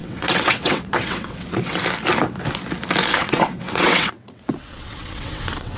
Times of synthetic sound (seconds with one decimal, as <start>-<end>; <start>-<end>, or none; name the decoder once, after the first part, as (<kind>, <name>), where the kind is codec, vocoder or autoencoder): 0.0-1.8 (vocoder, WaveNeXt); 3.2-5.8